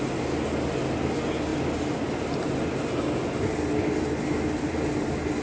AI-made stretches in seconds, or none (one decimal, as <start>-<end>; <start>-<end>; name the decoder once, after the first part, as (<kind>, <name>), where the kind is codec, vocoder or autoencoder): none